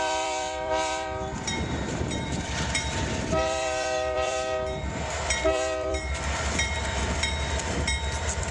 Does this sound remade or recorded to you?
remade